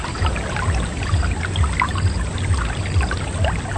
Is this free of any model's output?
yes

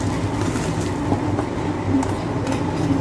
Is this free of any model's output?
yes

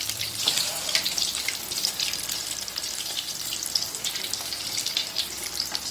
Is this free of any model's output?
no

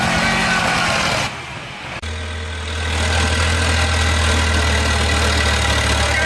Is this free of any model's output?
yes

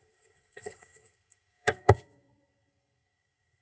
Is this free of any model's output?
no